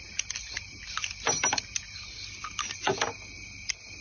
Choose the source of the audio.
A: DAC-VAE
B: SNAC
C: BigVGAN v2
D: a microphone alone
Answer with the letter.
D